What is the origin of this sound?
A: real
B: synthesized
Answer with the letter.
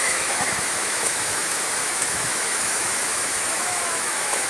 B